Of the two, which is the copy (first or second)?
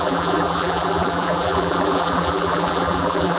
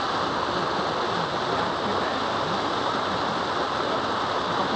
first